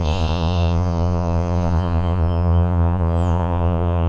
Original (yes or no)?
no